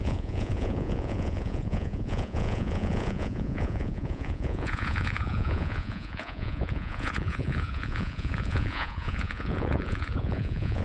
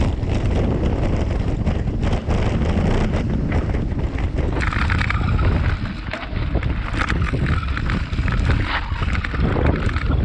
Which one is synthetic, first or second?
first